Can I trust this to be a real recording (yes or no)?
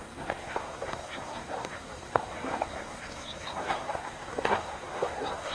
no